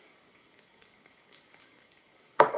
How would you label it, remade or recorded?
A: remade